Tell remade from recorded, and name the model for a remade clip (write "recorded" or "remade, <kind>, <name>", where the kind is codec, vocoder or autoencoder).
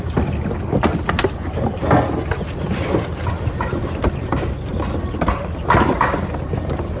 recorded